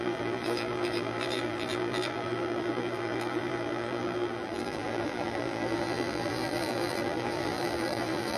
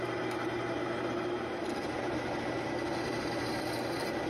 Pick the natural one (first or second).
second